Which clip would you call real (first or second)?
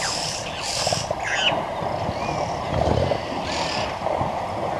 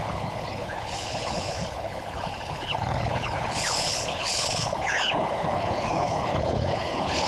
first